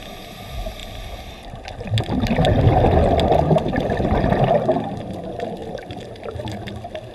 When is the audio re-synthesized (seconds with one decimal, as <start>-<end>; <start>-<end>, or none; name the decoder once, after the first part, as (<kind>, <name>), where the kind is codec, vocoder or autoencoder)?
none